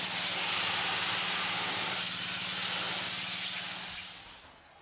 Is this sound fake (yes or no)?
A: no